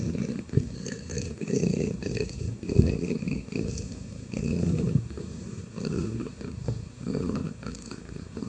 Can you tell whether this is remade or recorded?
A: remade